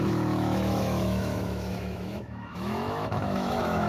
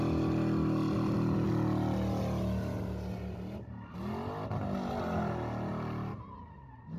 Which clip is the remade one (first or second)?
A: first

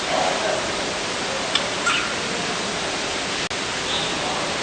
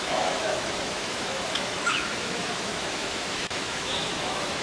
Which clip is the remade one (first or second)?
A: second